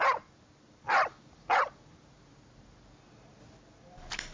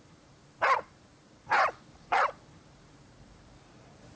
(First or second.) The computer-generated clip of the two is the second